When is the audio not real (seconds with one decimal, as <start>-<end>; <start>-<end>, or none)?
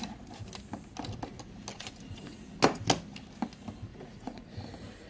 1.7-2.4; 3.9-4.6